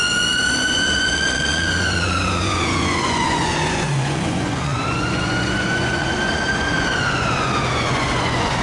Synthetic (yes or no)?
yes